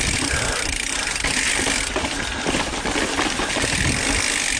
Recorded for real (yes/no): yes